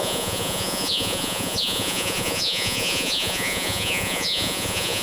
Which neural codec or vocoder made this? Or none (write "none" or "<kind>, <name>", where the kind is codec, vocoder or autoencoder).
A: vocoder, Vocos